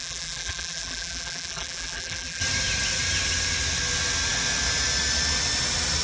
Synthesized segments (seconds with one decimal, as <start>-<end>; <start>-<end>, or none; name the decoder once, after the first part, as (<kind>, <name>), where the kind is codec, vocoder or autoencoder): 0.0-2.4 (vocoder, BigVGAN v2)